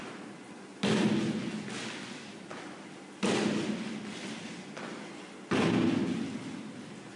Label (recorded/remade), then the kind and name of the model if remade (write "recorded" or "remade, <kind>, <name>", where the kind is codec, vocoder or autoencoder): recorded